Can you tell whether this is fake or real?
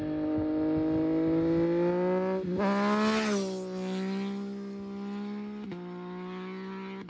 real